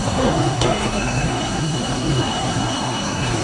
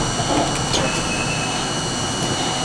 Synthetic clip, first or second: first